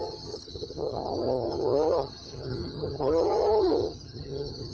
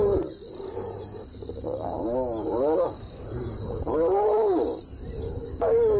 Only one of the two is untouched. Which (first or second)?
second